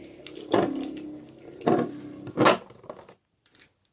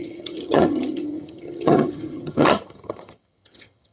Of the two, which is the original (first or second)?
first